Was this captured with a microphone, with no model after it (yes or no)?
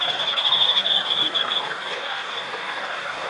no